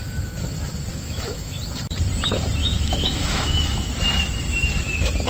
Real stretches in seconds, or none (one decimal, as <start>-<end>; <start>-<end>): 0.0-0.9; 1.6-2.6; 3.9-5.3